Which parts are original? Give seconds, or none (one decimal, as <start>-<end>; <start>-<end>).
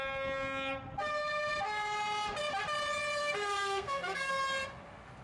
0.0-3.2; 4.3-5.2